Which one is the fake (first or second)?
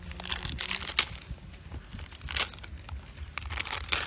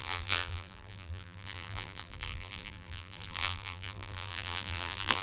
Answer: second